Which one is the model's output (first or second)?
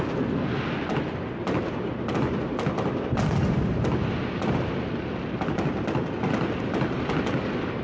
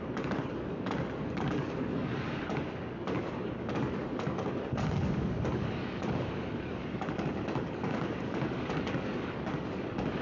second